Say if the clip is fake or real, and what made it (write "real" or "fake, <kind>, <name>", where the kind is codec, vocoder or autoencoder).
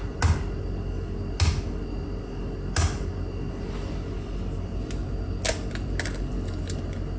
real